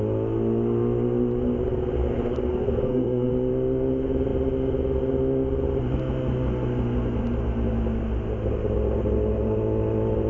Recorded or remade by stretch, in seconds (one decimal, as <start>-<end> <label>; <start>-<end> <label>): 0.0-2.5 recorded; 2.5-3.3 remade; 3.3-10.3 recorded